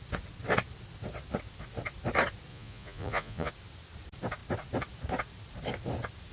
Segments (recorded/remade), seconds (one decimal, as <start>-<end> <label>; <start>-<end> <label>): 0.0-2.5 recorded; 2.5-3.5 remade; 3.5-6.3 recorded